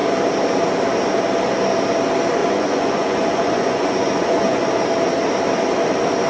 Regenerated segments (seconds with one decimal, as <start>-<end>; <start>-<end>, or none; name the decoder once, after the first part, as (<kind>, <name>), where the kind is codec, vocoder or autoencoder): 2.4-4.6 (vocoder, Vocos)